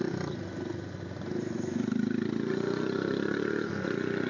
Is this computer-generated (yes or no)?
no